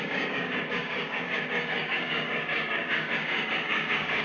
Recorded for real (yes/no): no